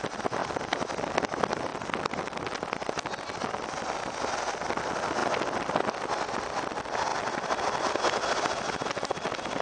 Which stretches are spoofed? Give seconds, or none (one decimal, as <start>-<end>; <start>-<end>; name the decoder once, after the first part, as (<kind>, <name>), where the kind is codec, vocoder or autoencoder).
none